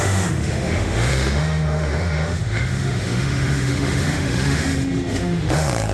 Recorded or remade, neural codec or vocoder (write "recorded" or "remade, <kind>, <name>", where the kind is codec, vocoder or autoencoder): remade, autoencoder, DAC-VAE